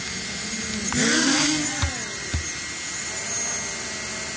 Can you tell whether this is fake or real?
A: real